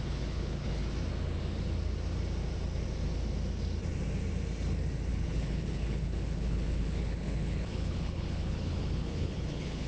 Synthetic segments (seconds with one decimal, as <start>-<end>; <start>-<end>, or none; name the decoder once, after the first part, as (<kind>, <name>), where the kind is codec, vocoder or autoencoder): 0.0-0.8 (codec, HILCodec); 5.1-9.9